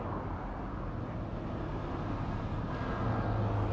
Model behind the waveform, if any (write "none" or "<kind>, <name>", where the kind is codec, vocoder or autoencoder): none